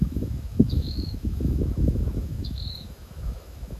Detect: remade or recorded remade